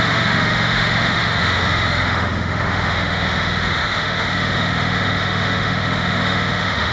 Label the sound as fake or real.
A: fake